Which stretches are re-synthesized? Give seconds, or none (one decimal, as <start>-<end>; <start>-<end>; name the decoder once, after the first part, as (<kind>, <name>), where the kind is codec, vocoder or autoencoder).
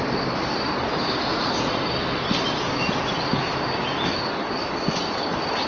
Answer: 1.3-1.8 (vocoder, Vocos)